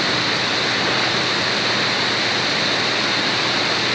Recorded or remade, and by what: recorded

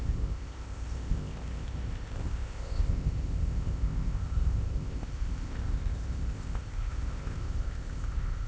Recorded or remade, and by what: remade, codec, ZipCodec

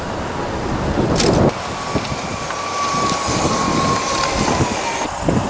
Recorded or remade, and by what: recorded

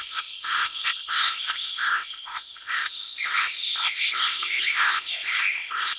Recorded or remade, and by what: remade, codec, ZipCodec